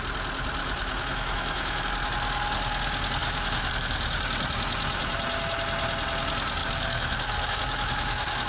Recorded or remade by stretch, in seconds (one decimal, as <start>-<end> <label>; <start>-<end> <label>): 0.0-0.6 recorded; 0.6-1.9 remade; 1.9-3.2 recorded; 3.2-3.7 remade; 3.7-6.6 recorded; 6.6-8.5 remade